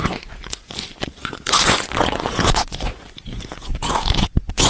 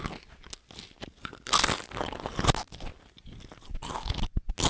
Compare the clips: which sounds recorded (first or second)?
second